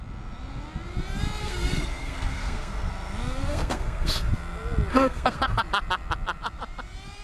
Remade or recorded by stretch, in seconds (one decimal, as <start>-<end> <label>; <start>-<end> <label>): 0.0-1.4 recorded; 1.4-2.9 remade; 2.9-3.5 recorded; 3.5-4.3 remade; 4.3-4.9 recorded; 4.9-5.6 remade; 5.6-7.2 recorded